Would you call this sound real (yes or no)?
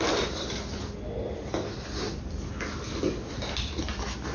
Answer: yes